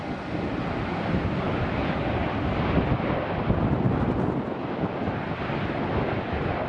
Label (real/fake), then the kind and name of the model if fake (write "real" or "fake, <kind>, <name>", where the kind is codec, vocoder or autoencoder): real